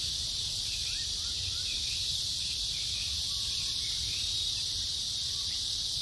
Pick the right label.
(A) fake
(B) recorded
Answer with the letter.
A